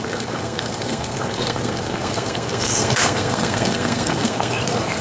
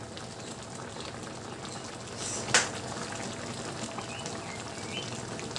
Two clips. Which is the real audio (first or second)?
second